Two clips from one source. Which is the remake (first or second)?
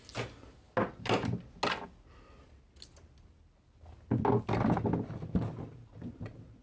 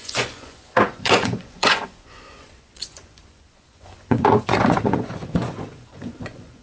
second